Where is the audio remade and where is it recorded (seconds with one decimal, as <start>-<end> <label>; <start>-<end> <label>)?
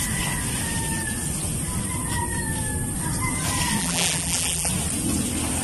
0.0-3.8 recorded; 3.8-4.7 remade; 4.7-5.6 recorded